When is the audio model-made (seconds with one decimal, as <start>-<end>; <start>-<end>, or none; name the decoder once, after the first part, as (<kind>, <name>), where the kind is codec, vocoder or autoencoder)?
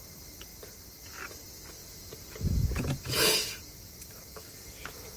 1.8-5.2 (vocoder, Vocos)